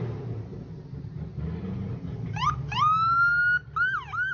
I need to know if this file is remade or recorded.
recorded